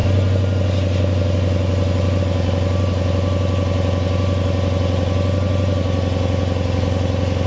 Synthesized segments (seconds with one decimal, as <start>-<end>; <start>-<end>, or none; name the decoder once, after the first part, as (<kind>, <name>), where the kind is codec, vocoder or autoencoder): none